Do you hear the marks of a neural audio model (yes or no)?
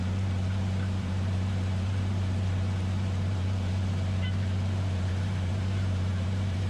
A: yes